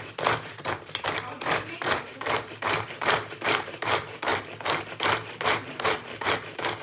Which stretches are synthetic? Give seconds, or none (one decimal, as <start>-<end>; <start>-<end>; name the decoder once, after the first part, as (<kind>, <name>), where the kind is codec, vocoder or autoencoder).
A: 0.0-4.3 (vocoder, BigVGAN v2); 4.9-6.8